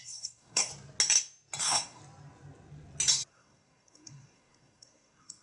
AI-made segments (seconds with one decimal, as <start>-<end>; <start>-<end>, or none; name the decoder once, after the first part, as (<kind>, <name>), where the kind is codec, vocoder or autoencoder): 0.0-0.7 (codec, SNAC); 1.6-2.0; 3.3-5.4

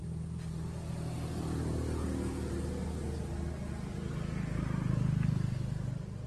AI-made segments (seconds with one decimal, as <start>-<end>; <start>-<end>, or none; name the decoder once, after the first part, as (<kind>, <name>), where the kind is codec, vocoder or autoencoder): none

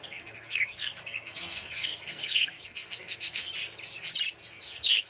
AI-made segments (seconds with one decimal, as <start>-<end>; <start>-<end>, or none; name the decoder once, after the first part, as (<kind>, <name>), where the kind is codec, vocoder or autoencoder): 0.0-3.5 (codec, SNAC); 4.5-5.1

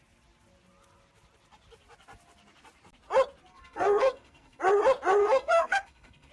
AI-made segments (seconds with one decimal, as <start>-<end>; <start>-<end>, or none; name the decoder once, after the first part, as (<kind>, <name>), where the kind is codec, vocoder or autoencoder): 3.5-4.6 (codec, SNAC); 5.2-6.3

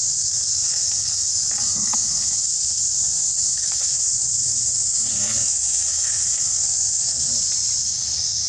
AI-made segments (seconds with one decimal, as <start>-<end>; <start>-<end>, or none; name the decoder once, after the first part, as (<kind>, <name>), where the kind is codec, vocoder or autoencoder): 0.0-7.3 (codec, SNAC); 7.8-8.5

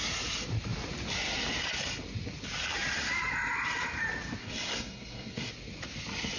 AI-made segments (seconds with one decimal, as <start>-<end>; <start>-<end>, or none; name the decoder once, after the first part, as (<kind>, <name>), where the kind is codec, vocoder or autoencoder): 4.4-5.5 (codec, SNAC)

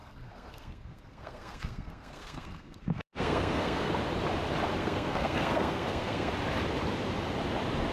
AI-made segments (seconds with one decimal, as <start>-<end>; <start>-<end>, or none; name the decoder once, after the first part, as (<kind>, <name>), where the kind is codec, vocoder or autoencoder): 0.0-3.9 (codec, SNAC); 4.8-6.3